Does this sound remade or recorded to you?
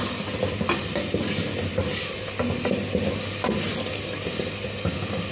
recorded